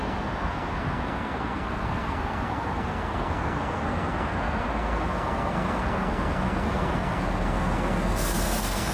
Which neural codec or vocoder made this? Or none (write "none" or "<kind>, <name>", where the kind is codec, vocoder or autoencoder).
codec, SNAC